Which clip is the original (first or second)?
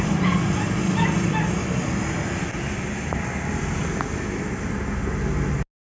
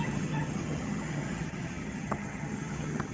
first